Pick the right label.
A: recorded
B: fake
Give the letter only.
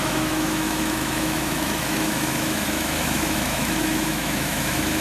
B